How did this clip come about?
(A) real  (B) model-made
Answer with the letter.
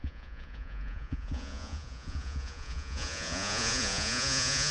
B